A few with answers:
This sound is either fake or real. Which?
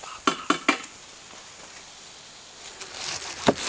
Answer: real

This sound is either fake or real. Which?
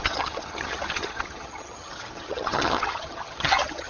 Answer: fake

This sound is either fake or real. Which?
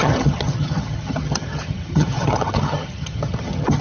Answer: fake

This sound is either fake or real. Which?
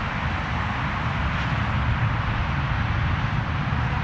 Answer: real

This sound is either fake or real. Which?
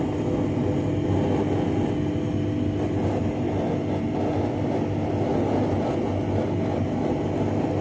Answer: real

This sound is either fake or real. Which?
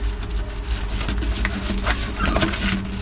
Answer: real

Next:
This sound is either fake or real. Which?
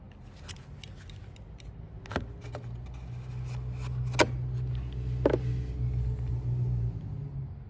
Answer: real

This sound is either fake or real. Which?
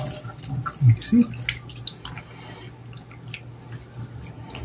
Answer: real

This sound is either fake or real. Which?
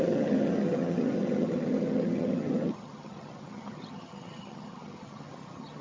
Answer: fake